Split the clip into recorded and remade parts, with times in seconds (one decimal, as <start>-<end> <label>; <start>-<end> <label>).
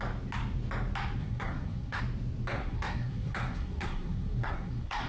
0.0-1.2 recorded; 1.2-2.0 remade; 2.0-2.6 recorded; 2.6-5.1 remade